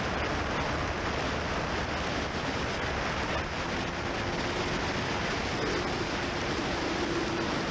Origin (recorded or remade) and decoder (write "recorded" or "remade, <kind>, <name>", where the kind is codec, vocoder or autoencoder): recorded